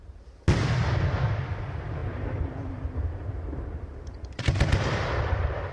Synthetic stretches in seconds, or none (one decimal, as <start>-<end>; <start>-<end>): none